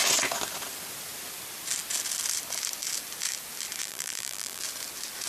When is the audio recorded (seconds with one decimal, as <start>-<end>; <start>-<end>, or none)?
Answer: 0.0-3.8; 4.6-5.3